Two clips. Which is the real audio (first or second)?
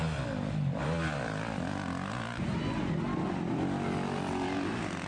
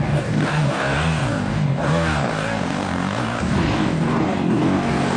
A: first